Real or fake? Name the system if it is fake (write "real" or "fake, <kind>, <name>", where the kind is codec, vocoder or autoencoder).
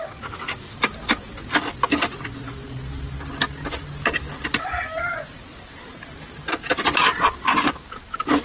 real